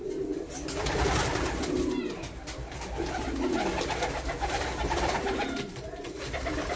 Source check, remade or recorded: recorded